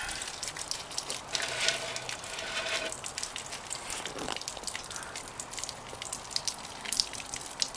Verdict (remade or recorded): recorded